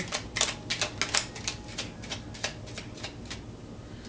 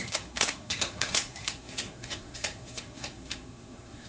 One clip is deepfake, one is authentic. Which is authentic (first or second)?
first